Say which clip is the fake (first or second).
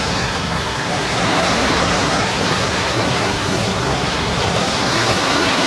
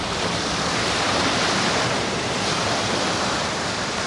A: first